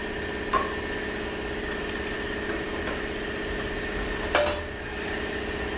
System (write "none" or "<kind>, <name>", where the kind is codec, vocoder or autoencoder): none